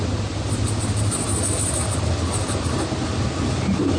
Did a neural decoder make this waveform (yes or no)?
no